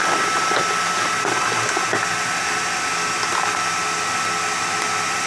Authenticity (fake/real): real